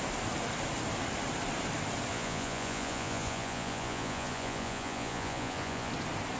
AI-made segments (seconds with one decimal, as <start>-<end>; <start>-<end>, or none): 2.1-5.9